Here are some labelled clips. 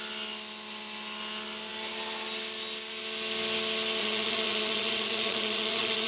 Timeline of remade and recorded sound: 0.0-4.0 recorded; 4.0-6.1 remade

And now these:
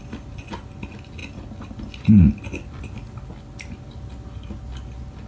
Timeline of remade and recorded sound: 0.0-5.3 recorded

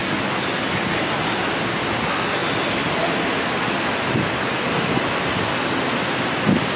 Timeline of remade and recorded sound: 0.0-6.8 recorded

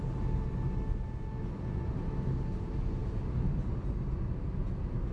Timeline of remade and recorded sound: 0.0-5.1 recorded

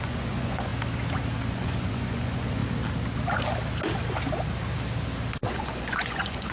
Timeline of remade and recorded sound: 0.0-0.7 remade; 0.7-1.5 recorded; 1.5-2.6 remade; 2.6-5.4 recorded; 5.4-6.5 remade

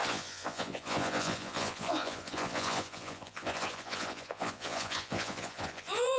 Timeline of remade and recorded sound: 0.0-6.2 remade